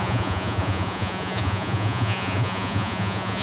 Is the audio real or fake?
fake